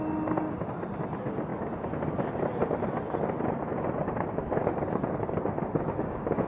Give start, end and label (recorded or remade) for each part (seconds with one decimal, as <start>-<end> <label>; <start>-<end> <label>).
0.0-3.7 recorded; 3.7-5.1 remade; 5.1-6.5 recorded